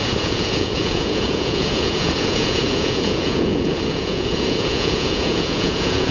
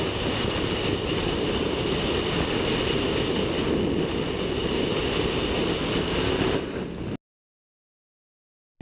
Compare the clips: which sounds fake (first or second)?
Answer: first